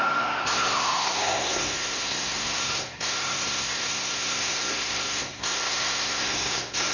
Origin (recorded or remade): remade